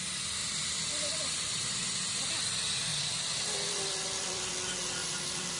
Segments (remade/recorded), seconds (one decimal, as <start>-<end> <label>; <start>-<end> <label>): 0.0-0.4 recorded; 0.4-2.3 remade; 2.3-2.9 recorded; 2.9-4.5 remade; 4.5-5.0 recorded; 5.0-5.6 remade